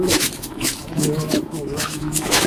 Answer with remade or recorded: remade